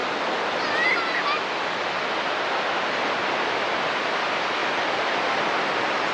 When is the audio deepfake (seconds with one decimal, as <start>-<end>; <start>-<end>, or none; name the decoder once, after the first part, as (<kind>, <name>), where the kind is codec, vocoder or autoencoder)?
none